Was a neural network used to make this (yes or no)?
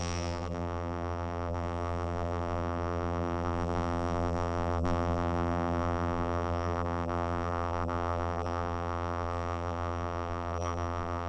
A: yes